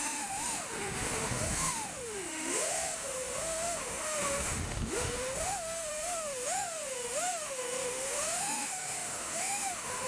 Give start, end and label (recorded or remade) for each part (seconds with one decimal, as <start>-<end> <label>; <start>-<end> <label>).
0.0-10.1 remade